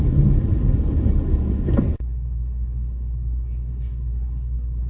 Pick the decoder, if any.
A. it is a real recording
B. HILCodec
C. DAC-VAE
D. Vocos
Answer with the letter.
B